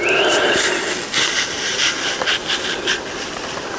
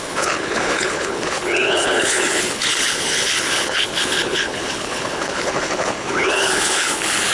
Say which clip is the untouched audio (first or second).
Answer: first